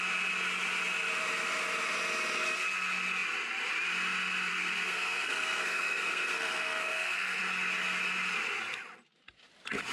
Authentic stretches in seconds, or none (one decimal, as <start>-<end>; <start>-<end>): 0.0-4.5; 7.4-9.9